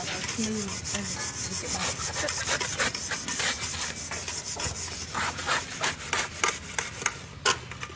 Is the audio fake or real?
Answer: real